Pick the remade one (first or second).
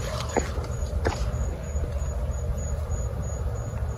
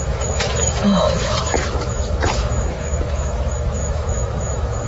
second